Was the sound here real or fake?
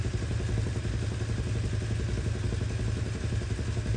real